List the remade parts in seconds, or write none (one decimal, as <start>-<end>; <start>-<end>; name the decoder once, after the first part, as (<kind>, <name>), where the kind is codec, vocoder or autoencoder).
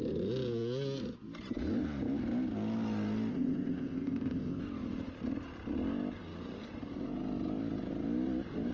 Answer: 3.3-4.6 (codec, ZipCodec)